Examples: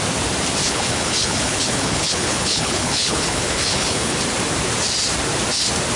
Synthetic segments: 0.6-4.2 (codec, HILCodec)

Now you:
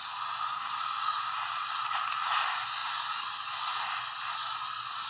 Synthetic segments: none